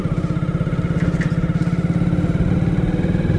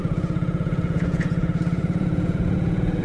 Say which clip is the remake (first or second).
second